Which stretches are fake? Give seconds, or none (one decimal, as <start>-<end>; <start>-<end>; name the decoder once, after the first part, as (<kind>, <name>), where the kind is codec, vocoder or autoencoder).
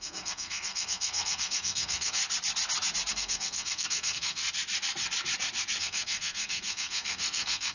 0.0-2.2 (codec, SNAC); 3.1-4.4; 5.8-7.7